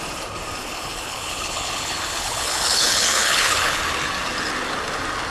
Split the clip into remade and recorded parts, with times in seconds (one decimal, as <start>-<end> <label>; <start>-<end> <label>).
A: 0.0-0.6 recorded; 0.6-3.8 remade; 3.8-5.3 recorded